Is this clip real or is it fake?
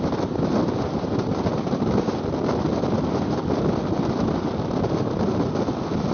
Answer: fake